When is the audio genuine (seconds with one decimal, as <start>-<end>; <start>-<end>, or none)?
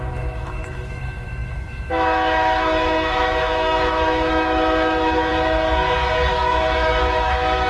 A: 5.3-6.3